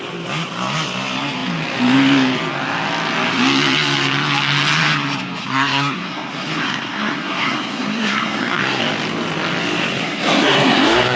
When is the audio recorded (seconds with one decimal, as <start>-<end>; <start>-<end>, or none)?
0.0-5.4; 8.8-10.0